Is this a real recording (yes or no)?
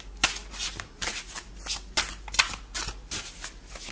yes